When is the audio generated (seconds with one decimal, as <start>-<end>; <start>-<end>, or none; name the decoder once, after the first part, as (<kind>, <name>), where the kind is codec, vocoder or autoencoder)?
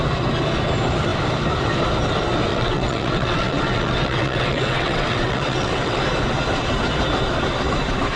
2.5-6.0 (vocoder, WaveNeXt)